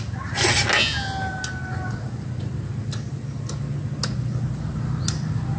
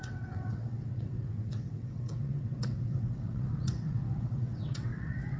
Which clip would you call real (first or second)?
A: first